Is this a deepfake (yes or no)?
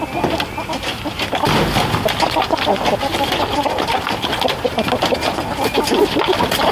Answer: no